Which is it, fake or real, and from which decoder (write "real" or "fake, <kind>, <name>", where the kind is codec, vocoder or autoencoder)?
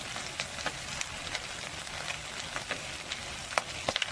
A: real